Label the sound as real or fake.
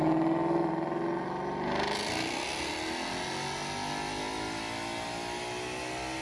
real